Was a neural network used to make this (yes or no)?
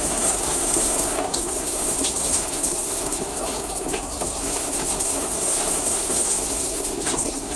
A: yes